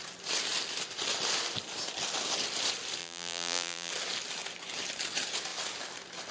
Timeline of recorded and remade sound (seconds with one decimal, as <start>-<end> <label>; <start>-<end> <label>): 0.0-3.0 recorded; 3.0-3.9 remade; 3.9-6.3 recorded